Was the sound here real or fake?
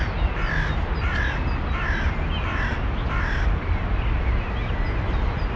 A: real